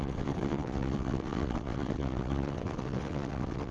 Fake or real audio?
fake